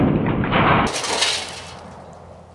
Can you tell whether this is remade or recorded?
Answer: recorded